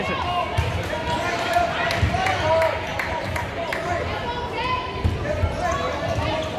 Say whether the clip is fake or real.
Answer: real